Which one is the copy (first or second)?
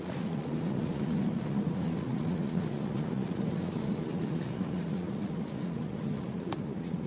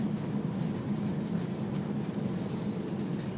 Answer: first